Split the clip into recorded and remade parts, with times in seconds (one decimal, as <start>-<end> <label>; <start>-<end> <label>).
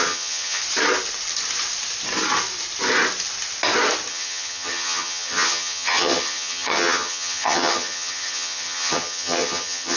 0.0-0.6 remade; 0.6-4.1 recorded; 4.1-10.0 remade